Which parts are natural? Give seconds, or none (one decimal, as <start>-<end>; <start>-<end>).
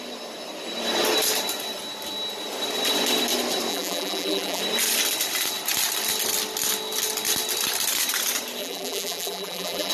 0.0-3.7; 4.6-8.6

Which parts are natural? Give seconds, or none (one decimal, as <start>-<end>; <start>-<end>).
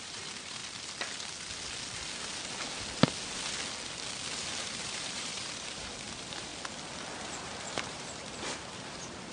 0.6-4.6; 6.5-7.3